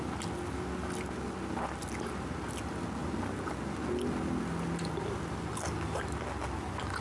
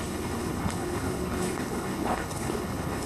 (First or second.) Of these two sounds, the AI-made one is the second